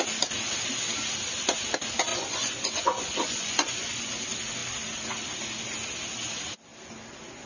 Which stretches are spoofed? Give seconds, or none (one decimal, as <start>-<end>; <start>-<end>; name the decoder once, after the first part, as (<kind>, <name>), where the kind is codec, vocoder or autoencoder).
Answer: 2.1-4.1 (vocoder, Vocos)